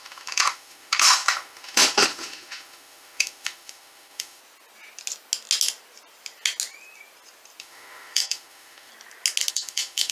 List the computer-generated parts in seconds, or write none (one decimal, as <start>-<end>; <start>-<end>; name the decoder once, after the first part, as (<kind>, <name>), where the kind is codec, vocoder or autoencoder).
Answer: 0.0-4.4 (autoencoder, DAC-VAE); 7.6-8.9; 9.5-10.1